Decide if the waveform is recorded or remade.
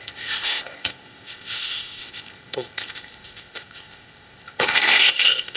remade